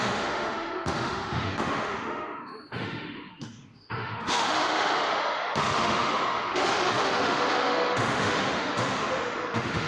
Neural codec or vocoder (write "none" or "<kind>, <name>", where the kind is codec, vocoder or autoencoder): autoencoder, DAC-VAE